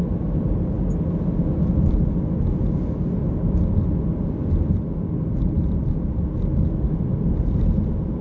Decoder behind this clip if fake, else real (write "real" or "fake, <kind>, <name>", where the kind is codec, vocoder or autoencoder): real